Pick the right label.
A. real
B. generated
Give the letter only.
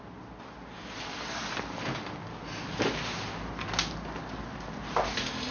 A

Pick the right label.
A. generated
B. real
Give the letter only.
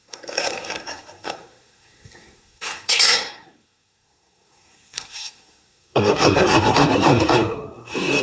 A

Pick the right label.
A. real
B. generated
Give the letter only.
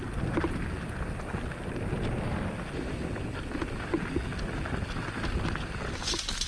A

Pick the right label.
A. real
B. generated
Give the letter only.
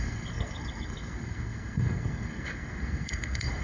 B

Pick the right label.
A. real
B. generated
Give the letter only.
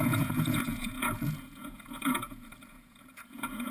B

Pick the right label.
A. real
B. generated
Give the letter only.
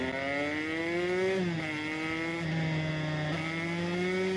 A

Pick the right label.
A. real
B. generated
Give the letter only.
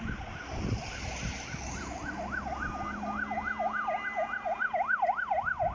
A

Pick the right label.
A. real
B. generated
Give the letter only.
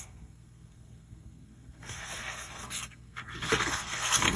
B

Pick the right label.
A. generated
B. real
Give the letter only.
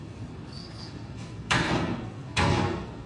A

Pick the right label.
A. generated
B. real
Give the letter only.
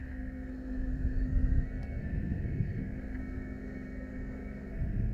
A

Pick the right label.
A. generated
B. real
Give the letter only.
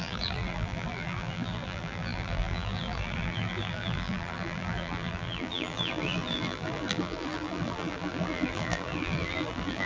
A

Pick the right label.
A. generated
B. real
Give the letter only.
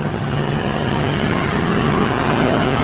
A